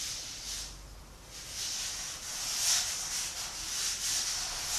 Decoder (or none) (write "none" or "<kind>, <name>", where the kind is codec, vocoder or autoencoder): none